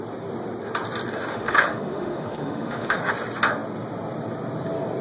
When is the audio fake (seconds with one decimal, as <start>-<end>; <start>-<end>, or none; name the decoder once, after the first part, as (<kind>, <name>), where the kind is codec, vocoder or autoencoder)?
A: 1.3-3.0 (autoencoder, DAC-VAE)